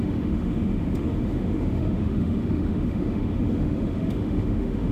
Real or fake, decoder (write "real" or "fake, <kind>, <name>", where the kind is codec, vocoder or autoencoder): fake, autoencoder, DAC-VAE